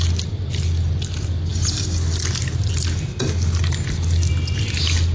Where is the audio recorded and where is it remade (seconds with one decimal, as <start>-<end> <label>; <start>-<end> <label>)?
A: 0.0-5.1 recorded